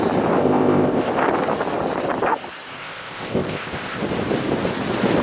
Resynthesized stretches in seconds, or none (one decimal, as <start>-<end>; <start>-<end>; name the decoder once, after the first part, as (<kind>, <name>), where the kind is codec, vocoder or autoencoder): 0.4-1.1 (codec, ZipCodec); 2.8-4.0

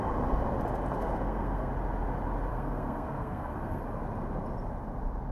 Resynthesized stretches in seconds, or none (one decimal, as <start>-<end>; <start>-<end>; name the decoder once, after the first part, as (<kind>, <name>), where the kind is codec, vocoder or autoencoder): 1.0-1.7 (codec, SNAC); 2.5-3.8

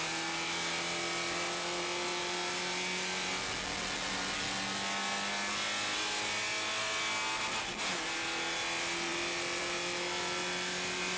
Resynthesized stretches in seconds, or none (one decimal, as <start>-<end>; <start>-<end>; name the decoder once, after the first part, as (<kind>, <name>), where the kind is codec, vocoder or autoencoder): none

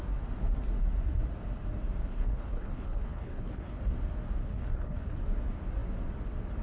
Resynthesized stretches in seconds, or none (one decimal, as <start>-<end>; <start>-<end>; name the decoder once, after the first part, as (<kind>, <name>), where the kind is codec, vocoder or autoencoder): 2.0-3.8 (codec, HILCodec); 4.4-5.2